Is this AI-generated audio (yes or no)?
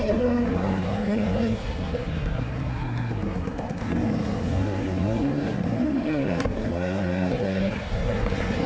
yes